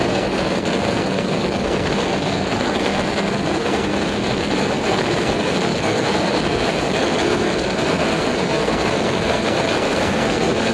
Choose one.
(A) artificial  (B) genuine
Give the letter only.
A